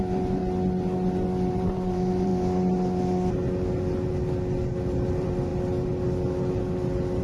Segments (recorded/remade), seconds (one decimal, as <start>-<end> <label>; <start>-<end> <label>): 0.0-0.4 remade; 0.4-1.5 recorded; 1.5-2.3 remade; 2.3-5.1 recorded; 5.1-5.5 remade; 5.5-7.2 recorded